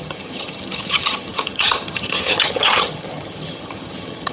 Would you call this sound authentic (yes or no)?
no